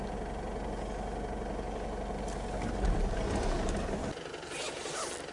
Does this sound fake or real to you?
real